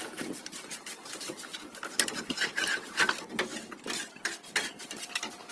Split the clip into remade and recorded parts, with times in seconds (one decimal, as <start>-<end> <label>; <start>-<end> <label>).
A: 0.0-5.5 recorded